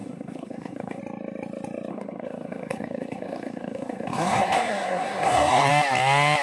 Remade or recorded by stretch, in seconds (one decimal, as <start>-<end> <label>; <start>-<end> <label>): 0.0-1.0 remade; 1.0-1.9 recorded; 1.9-5.7 remade; 5.7-6.4 recorded